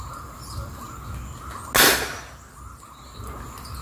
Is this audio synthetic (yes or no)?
no